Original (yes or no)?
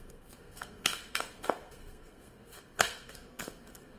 no